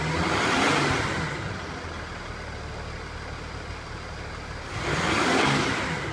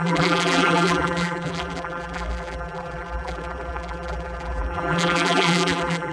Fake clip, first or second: second